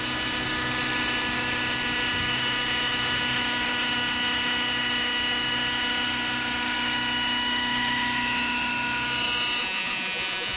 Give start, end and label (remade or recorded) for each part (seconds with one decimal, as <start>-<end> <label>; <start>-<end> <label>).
0.0-9.6 recorded; 9.6-10.6 remade